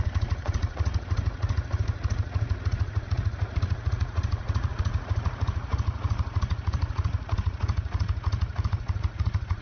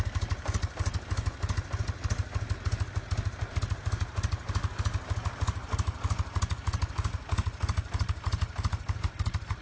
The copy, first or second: first